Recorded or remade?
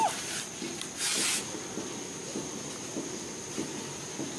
recorded